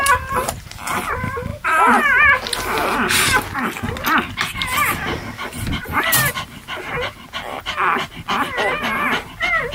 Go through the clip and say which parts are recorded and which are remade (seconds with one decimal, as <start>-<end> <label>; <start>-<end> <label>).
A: 0.0-9.7 recorded